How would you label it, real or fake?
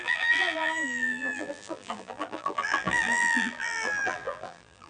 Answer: fake